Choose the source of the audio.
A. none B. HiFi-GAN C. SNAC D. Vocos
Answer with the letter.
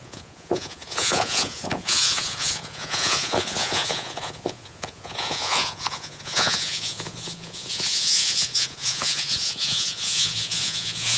D